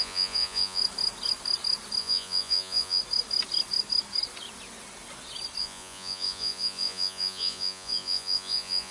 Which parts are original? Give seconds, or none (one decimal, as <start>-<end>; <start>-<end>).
0.8-2.0; 3.0-5.6

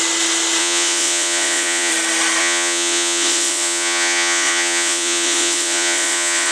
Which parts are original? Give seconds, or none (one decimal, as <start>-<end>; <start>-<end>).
0.0-0.6; 1.9-2.4

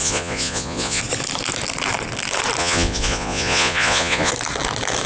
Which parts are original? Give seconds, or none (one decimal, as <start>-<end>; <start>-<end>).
1.0-2.6; 4.3-5.1